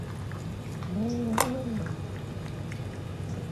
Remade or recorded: recorded